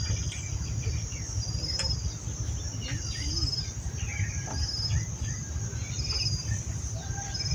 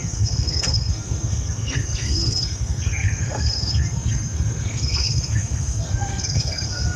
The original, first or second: first